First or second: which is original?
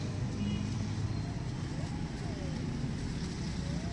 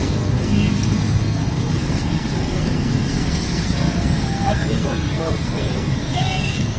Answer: first